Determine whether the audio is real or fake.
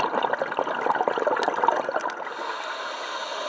real